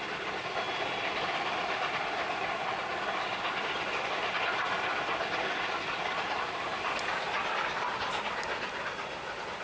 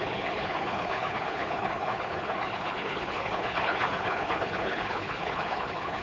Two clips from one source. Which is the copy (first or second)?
second